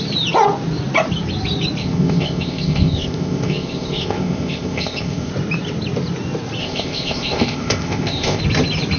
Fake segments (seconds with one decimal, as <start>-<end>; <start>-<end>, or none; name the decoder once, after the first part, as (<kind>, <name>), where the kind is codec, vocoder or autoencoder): 1.8-5.3 (codec, ZipCodec); 6.6-8.4